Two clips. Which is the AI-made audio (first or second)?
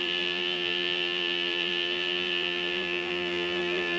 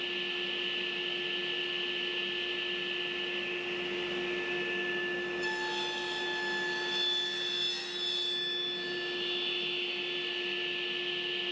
first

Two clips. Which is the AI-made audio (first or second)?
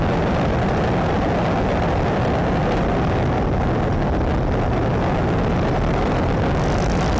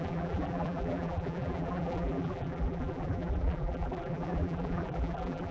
second